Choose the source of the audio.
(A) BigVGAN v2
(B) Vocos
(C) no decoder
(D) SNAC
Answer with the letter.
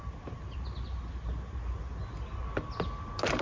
C